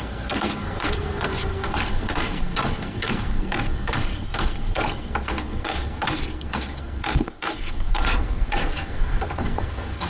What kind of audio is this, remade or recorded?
remade